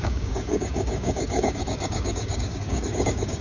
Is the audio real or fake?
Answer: fake